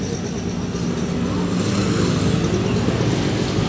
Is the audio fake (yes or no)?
no